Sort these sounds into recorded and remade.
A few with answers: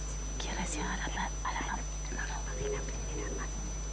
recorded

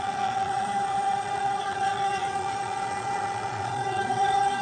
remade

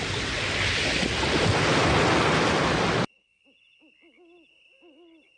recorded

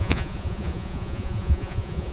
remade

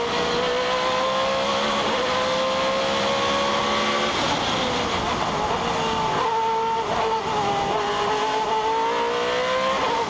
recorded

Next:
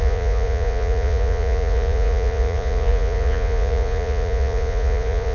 remade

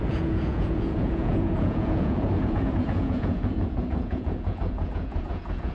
remade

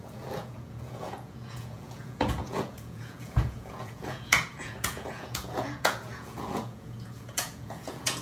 remade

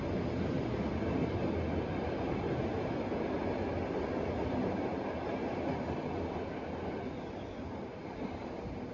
recorded